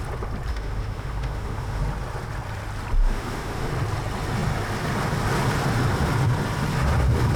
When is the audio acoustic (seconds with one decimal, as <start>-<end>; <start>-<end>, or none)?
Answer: 0.0-0.5; 1.8-3.0; 3.7-7.4